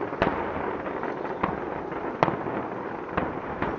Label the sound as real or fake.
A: real